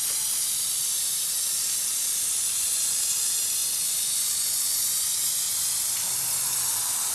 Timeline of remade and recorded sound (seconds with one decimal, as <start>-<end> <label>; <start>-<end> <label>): 0.0-3.6 recorded; 3.6-5.7 remade; 5.7-7.1 recorded